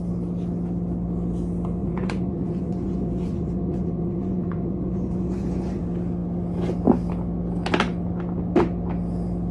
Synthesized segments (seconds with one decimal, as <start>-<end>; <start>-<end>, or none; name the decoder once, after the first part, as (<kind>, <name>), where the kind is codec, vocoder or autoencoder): 1.8-5.8 (vocoder, Vocos)